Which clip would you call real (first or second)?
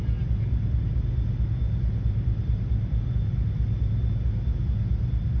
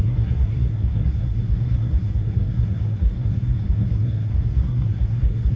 first